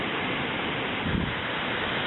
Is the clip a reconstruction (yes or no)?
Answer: no